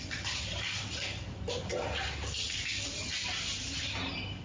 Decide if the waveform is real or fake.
real